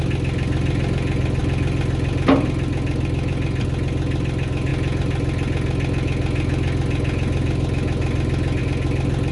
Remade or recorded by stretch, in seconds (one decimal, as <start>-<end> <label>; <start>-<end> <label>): 0.0-9.3 recorded